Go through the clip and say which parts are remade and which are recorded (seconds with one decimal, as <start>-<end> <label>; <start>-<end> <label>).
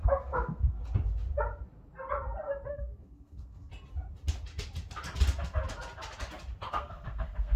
0.0-0.8 remade; 0.8-2.7 recorded; 2.7-3.7 remade; 3.7-6.7 recorded; 6.7-7.6 remade